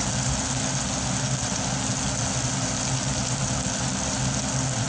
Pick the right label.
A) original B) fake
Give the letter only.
A